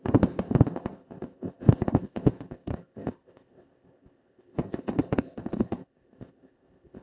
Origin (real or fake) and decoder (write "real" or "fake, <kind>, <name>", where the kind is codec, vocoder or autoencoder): fake, codec, ZipCodec